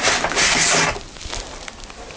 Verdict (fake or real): real